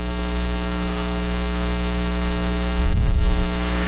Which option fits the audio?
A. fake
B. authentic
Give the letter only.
A